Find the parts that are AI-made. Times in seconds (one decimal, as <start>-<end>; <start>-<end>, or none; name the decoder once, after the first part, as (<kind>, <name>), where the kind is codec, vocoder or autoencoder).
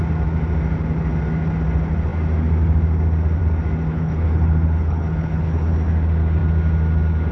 3.9-5.7 (codec, HILCodec)